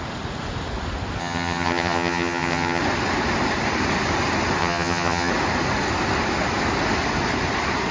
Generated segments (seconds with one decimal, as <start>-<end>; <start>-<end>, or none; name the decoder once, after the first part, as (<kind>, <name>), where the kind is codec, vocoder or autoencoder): 1.2-2.8 (vocoder, HiFi-GAN); 4.6-5.3

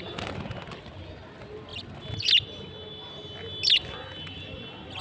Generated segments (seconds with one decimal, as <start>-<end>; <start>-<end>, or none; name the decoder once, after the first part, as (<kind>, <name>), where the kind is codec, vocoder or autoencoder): none

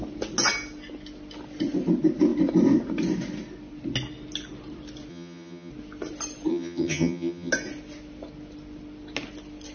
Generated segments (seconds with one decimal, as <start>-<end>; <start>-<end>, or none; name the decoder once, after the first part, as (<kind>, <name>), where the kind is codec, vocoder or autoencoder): 5.1-5.7 (vocoder, HiFi-GAN); 6.5-7.5

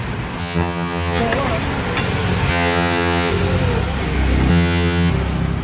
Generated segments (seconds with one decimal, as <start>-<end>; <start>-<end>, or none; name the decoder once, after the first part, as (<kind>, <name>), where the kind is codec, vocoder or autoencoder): 0.4-1.2 (vocoder, HiFi-GAN); 2.5-3.3; 4.5-5.1

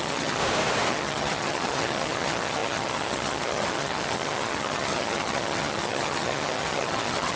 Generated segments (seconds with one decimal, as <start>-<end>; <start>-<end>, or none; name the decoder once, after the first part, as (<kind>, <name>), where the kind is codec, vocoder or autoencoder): 0.0-0.4 (vocoder, HiFi-GAN); 0.9-7.4

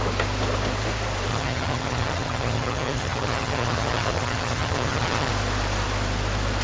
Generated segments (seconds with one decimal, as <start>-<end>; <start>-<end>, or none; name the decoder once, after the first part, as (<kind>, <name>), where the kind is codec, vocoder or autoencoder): 1.3-5.3 (vocoder, HiFi-GAN)

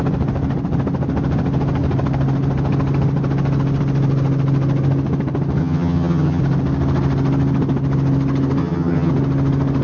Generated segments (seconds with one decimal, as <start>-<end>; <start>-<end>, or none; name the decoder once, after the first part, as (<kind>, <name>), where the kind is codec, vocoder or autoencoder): 5.6-6.4 (vocoder, HiFi-GAN); 8.6-9.1

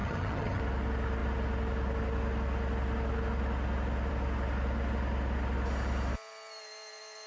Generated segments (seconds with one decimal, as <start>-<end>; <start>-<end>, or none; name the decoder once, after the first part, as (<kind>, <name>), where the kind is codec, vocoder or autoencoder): 0.0-0.6 (vocoder, HiFi-GAN)